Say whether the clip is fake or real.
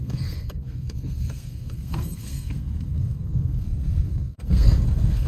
fake